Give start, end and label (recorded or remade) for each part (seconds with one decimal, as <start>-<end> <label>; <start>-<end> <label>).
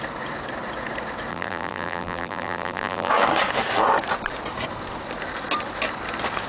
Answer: 0.0-1.3 recorded; 1.3-3.1 remade; 3.1-6.5 recorded